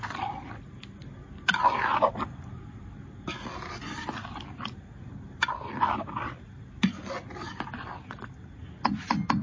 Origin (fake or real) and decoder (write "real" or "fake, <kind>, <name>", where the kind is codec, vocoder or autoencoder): real